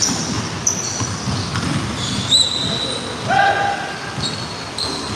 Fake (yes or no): no